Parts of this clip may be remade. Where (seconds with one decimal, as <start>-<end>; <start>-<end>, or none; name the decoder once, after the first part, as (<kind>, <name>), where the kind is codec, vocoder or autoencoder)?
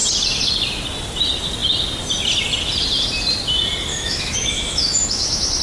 3.9-5.6 (autoencoder, DAC-VAE)